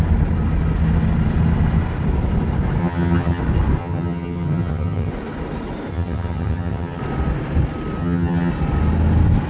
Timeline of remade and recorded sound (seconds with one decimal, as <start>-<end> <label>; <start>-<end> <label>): 0.0-2.8 recorded; 2.8-3.4 remade; 3.4-3.8 recorded; 3.8-5.1 remade; 5.1-5.9 recorded; 5.9-7.0 remade; 7.0-8.0 recorded; 8.0-8.5 remade; 8.5-9.5 recorded